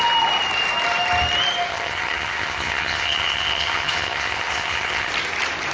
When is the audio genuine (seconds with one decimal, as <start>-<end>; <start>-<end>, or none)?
0.0-1.7; 5.1-5.7